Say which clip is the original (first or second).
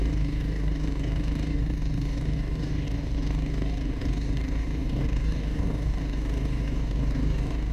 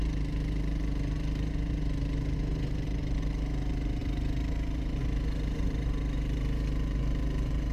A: second